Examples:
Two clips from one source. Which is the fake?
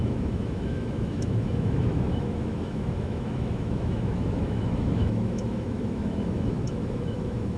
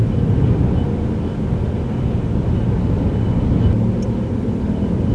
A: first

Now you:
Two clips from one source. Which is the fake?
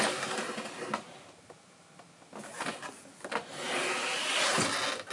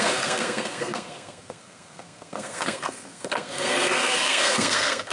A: second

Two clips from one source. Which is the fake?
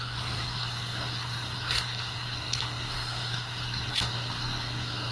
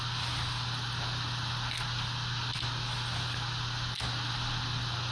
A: first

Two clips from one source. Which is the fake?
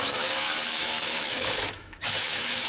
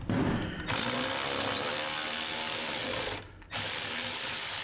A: first